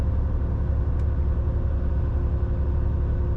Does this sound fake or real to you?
real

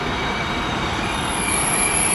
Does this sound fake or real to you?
fake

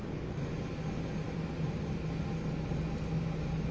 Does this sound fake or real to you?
real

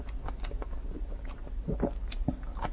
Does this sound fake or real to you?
real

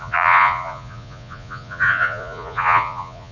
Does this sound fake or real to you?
fake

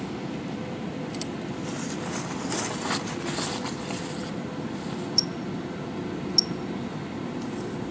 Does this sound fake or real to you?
real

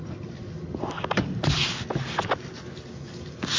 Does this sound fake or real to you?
real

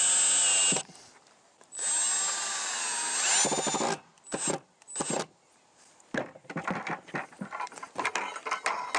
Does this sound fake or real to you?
real